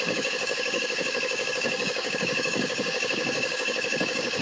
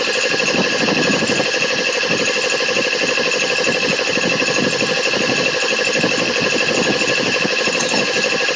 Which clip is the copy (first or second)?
first